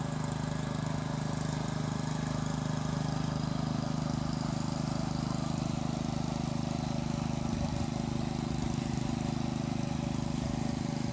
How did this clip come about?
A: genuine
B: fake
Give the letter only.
A